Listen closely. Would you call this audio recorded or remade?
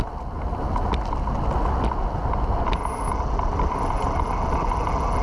recorded